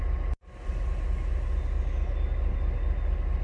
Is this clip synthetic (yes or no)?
no